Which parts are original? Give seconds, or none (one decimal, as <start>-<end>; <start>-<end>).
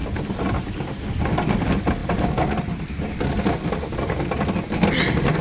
0.9-5.4